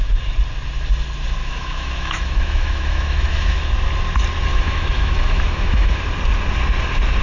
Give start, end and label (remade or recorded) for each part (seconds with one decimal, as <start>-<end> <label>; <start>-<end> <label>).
0.0-1.4 recorded; 1.4-3.6 remade; 3.6-4.5 recorded; 4.5-6.0 remade; 6.0-7.2 recorded